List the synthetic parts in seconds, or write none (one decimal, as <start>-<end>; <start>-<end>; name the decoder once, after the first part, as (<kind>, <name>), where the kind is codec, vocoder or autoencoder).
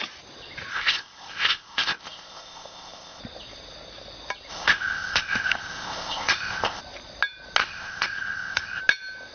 0.7-3.2 (codec, ZipCodec); 4.5-6.8; 7.6-8.8